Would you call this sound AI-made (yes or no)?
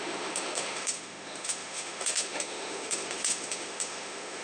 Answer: yes